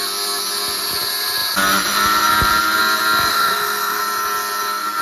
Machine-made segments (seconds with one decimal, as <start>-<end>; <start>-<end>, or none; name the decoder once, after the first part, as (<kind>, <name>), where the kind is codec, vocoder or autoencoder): 3.3-4.0 (codec, SNAC)